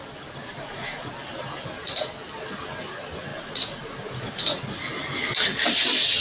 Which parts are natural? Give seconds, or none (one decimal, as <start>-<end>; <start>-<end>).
0.0-0.5; 1.1-3.3; 4.7-6.2